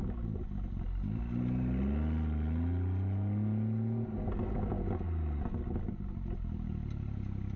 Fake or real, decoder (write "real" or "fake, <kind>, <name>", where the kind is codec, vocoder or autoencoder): real